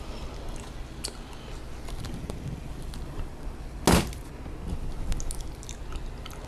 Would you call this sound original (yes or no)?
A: yes